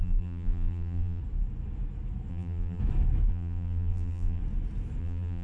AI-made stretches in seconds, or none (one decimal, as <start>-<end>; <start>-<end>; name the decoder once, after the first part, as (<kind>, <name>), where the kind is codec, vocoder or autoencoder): 0.0-1.2 (vocoder, BigVGAN v2); 2.3-2.8; 3.3-4.4; 5.0-5.4